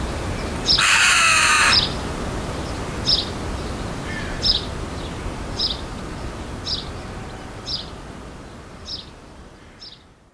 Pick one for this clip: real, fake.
real